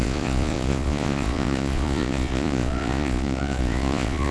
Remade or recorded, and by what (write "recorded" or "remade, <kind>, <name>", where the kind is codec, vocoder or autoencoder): remade, vocoder, Vocos